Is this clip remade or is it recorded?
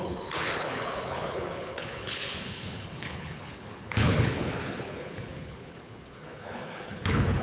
remade